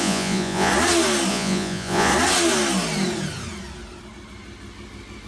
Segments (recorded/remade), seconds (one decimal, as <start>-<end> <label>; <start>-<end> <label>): 0.0-0.7 remade; 0.7-1.3 recorded; 1.3-2.1 remade; 2.1-5.3 recorded